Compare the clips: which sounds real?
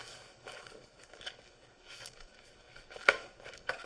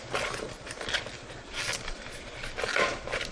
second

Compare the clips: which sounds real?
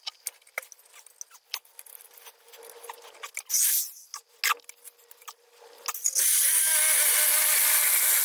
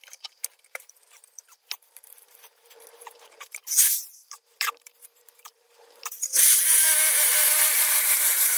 first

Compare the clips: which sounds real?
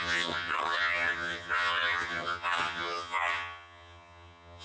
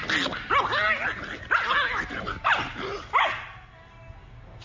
second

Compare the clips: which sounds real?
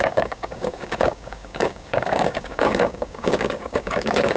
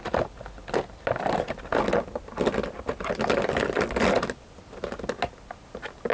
second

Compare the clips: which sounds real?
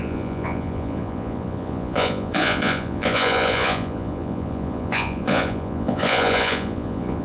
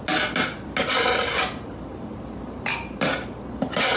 second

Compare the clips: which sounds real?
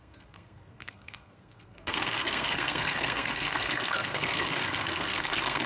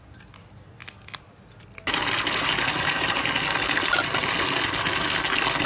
second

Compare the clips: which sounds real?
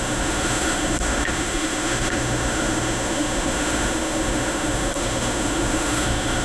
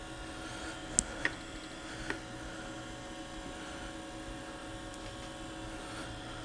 second